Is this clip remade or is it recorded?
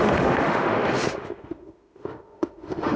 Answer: remade